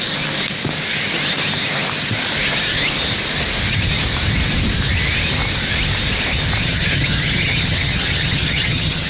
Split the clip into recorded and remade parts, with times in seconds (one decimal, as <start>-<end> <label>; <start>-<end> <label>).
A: 0.0-6.6 recorded; 6.6-9.1 remade